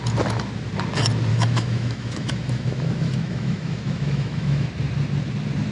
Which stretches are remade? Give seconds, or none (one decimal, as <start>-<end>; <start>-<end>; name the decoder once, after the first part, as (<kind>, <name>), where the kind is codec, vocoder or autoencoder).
1.3-4.7 (autoencoder, DAC-VAE)